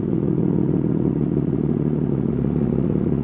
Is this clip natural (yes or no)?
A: no